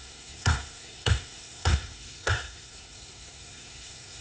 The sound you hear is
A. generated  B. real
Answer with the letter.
A